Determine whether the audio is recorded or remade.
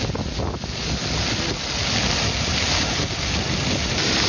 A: recorded